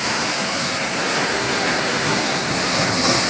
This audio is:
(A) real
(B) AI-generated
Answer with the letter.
B